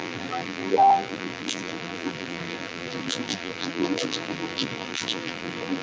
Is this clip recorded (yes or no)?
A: no